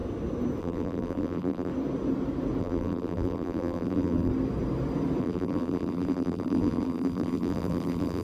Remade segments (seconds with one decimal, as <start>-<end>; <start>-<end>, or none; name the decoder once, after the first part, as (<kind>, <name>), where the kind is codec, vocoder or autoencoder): 0.6-1.7 (vocoder, BigVGAN v2); 2.6-4.3; 5.2-8.2